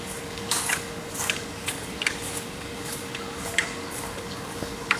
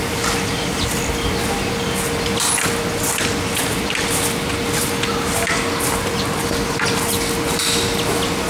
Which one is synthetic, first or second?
first